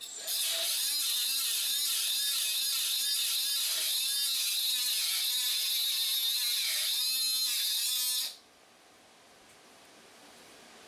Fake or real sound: real